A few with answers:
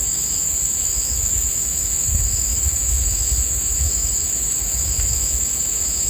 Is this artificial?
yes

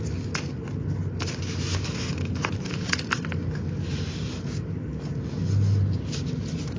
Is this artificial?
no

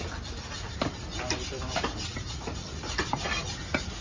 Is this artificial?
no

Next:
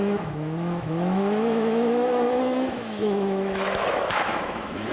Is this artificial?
yes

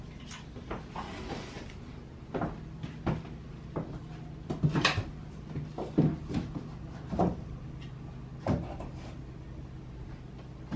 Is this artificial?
no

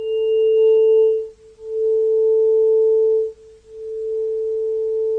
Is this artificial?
no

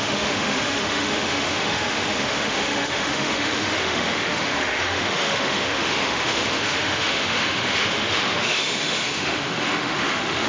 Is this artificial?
yes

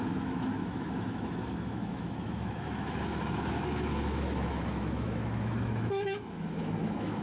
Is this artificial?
yes